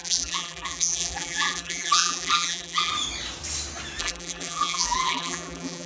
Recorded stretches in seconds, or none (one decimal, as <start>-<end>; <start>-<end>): 2.9-4.0